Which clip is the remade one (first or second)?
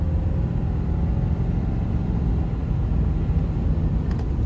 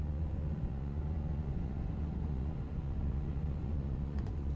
second